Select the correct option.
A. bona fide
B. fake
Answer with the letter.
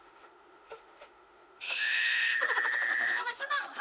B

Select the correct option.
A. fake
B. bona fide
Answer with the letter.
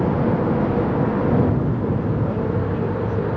B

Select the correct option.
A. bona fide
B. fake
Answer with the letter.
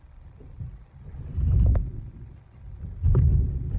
A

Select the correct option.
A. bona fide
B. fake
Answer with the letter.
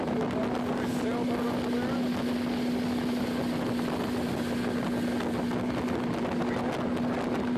A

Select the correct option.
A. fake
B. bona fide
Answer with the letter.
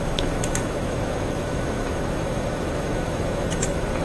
A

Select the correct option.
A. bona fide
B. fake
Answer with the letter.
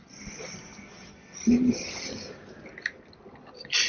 A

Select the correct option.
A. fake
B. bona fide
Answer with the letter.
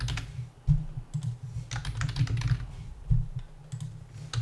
B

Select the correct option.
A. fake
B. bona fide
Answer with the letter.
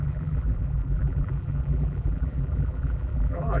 A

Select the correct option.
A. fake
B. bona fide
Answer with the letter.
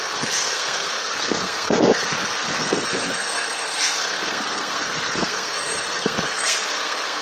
A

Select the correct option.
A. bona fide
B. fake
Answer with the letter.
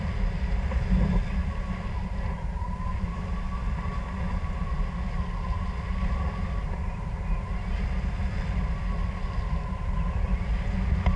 A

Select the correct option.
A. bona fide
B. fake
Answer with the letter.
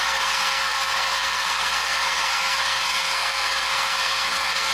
B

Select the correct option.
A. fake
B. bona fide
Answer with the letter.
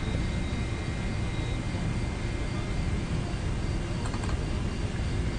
B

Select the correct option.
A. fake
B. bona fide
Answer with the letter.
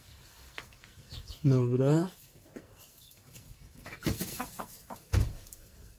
A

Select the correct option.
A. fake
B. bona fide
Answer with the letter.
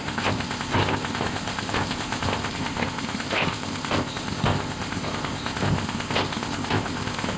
A